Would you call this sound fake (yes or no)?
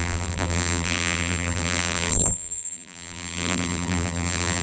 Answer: yes